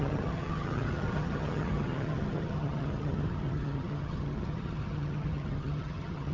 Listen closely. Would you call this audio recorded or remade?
remade